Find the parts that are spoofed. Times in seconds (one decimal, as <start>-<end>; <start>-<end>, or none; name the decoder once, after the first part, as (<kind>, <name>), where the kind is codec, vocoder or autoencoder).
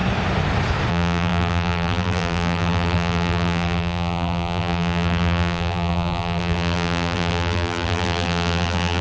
0.9-9.0 (vocoder, BigVGAN v2)